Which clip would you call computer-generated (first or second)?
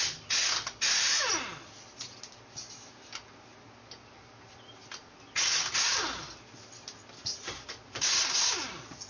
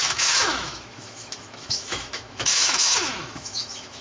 second